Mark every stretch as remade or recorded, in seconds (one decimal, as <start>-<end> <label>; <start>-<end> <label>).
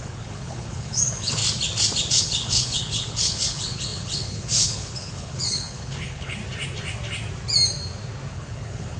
0.0-1.4 remade; 1.4-2.1 recorded; 2.1-6.4 remade; 6.4-8.3 recorded; 8.3-9.0 remade